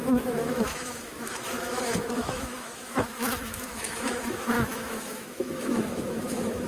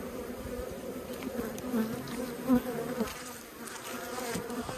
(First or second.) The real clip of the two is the second